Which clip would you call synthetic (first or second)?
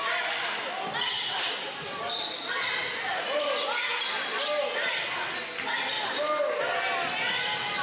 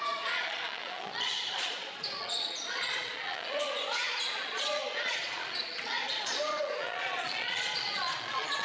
second